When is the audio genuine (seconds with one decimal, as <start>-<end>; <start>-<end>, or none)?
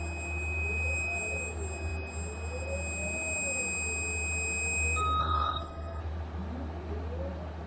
0.0-5.2; 6.0-7.7